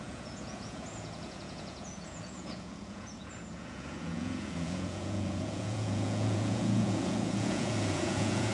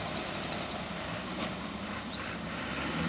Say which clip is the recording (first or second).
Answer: second